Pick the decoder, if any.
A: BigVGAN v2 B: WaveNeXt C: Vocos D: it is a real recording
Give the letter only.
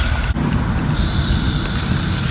D